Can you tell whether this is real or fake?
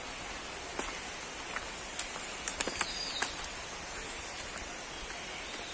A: real